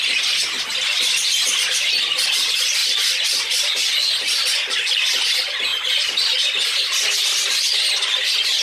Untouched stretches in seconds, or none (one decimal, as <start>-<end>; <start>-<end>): 0.0-8.6